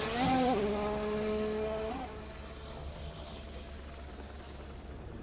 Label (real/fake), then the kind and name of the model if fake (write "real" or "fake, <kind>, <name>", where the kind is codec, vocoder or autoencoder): real